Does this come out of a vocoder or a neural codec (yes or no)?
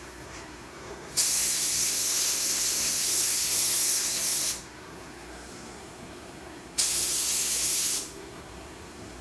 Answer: yes